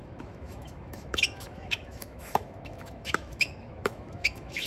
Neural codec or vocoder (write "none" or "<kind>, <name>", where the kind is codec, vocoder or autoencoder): autoencoder, DAC-VAE